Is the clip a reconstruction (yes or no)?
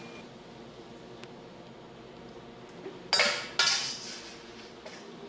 no